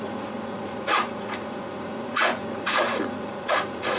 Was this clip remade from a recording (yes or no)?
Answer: yes